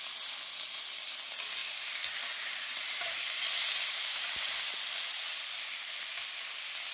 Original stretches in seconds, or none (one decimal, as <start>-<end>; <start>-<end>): 0.0-1.6; 4.5-6.9